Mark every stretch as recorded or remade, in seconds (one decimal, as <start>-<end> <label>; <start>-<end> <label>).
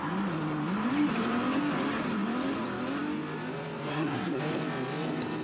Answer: 0.0-3.9 recorded; 3.9-4.4 remade; 4.4-5.4 recorded